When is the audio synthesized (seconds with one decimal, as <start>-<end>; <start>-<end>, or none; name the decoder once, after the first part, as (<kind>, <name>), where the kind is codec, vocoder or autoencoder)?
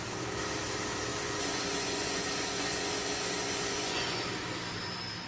1.1-4.3 (vocoder, Vocos)